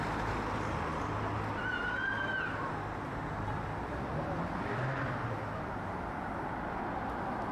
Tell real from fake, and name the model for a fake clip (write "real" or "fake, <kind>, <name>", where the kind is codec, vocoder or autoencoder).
real